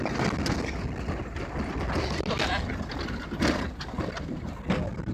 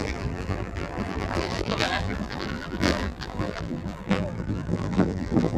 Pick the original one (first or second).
first